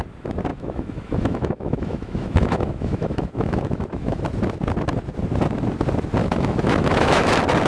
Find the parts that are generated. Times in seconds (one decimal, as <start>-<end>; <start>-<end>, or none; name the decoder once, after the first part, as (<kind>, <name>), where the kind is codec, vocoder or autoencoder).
0.5-4.2 (autoencoder, DAC-VAE); 6.2-7.3